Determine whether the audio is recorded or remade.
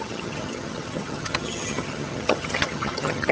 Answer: remade